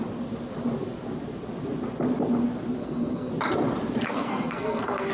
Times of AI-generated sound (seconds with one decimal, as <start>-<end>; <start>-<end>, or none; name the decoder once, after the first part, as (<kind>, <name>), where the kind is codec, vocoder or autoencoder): 2.8-3.3 (codec, SNAC); 4.1-5.1